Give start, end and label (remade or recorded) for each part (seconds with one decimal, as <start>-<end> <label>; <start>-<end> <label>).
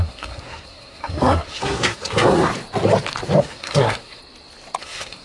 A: 0.0-2.5 remade; 2.5-3.4 recorded; 3.4-4.2 remade; 4.2-4.8 recorded; 4.8-5.2 remade